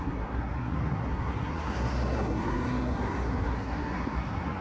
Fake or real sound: fake